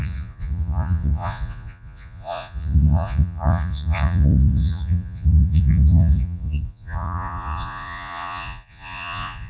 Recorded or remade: remade